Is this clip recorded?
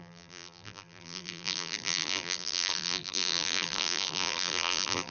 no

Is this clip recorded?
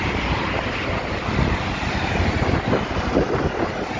yes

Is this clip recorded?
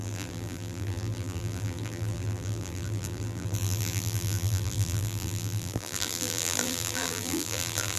no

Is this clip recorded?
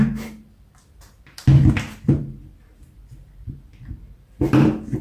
no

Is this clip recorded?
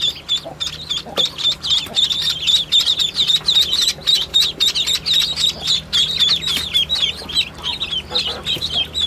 yes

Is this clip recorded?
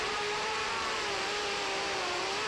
no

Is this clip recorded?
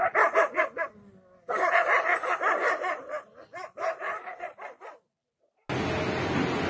yes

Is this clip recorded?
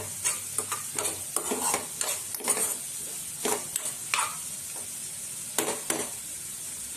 yes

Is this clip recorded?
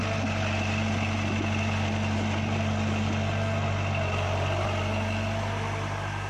yes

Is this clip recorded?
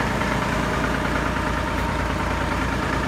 no